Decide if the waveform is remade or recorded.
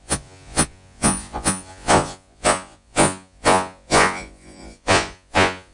remade